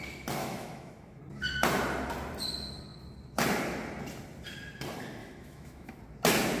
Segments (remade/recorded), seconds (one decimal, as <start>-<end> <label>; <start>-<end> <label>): 0.0-0.4 recorded; 0.4-1.2 remade; 1.2-5.2 recorded; 5.2-6.0 remade; 6.0-6.6 recorded